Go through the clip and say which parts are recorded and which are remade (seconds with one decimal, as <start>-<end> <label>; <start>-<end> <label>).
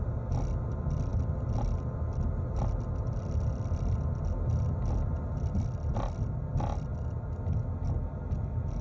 0.0-8.8 recorded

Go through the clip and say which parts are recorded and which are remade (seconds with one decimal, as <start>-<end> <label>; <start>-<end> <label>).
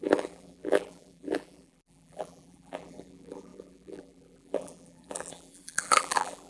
0.0-6.5 remade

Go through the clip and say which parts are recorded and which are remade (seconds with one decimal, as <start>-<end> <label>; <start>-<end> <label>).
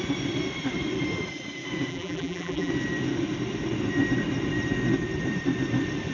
0.0-1.9 recorded; 1.9-2.7 remade; 2.7-6.1 recorded